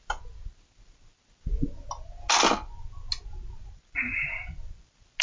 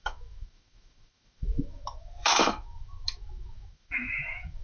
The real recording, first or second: first